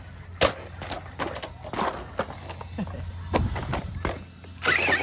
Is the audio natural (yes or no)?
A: yes